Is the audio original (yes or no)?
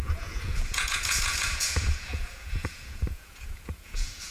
no